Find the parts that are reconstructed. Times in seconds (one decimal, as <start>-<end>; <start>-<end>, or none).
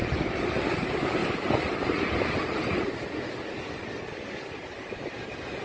none